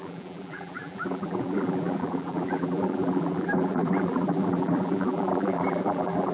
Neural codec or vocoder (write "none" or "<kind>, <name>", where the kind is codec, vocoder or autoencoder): vocoder, BigVGAN v2